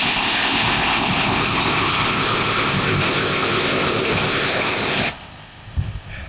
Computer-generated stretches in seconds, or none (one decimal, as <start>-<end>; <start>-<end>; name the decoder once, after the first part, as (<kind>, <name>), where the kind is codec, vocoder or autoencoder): 0.0-6.3 (codec, ZipCodec)